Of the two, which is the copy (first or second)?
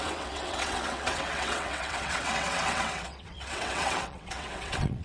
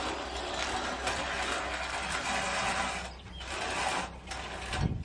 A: first